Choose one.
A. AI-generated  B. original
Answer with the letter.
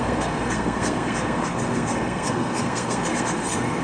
A